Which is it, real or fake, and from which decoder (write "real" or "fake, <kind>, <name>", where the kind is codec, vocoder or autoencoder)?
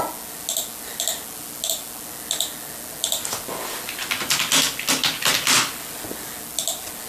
real